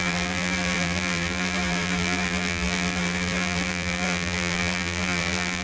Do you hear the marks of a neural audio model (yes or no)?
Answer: yes